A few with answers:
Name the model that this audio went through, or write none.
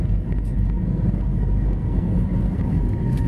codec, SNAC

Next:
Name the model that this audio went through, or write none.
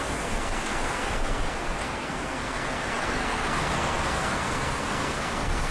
codec, SNAC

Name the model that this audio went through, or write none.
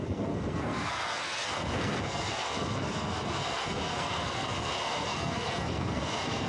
codec, SNAC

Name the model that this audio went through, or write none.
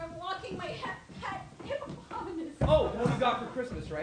none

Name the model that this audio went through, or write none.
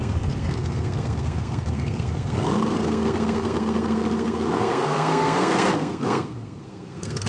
codec, SNAC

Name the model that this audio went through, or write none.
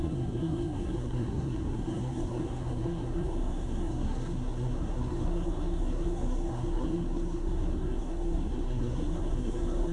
codec, SNAC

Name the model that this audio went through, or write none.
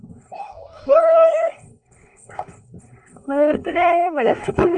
codec, SNAC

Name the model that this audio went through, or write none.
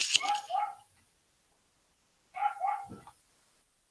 none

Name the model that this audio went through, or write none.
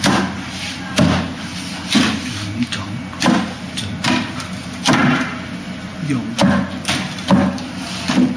none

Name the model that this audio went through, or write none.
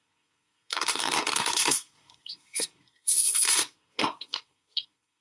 codec, SNAC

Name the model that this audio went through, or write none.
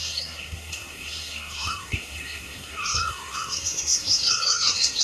codec, SNAC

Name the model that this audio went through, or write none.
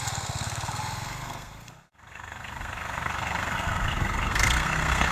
codec, SNAC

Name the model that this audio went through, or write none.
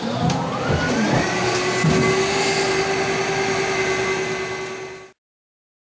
none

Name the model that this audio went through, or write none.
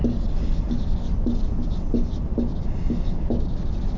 none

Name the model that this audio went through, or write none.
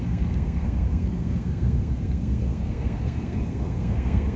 codec, SNAC